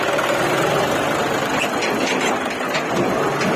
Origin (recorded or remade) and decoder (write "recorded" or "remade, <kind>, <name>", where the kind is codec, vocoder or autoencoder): recorded